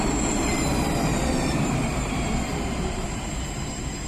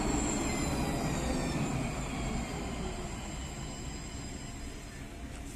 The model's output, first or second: first